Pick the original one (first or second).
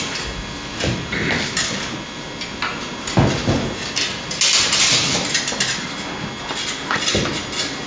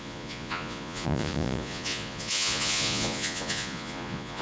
first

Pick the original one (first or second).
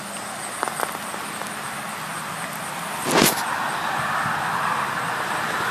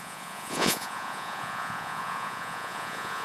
first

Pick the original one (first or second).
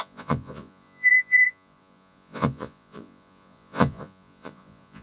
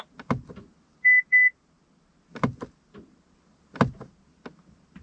second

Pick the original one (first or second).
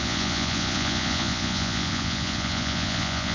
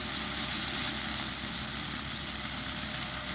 second